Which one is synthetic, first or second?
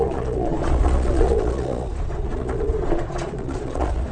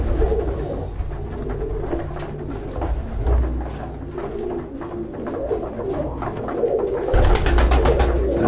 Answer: first